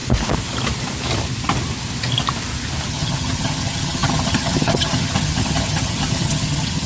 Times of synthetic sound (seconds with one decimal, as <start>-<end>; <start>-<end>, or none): 2.9-6.9